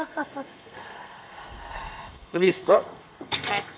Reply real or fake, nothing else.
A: fake